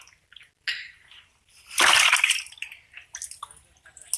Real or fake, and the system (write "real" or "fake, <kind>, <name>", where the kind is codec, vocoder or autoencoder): real